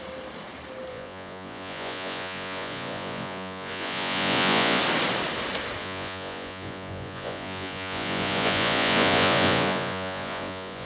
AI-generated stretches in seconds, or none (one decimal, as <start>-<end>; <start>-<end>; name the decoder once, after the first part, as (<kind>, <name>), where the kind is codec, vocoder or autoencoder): 0.9-4.8 (vocoder, Vocos); 5.8-10.9